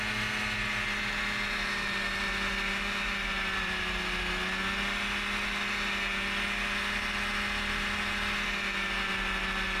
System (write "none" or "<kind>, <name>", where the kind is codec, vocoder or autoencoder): none